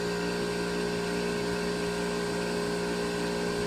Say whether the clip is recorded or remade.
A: recorded